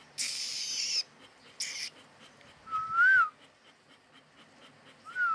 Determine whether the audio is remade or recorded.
recorded